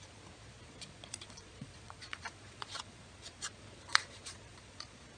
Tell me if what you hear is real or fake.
fake